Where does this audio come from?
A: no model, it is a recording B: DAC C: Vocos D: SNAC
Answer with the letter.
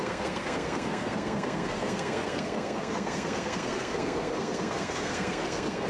D